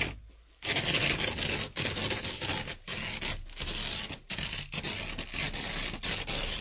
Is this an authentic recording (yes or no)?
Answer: yes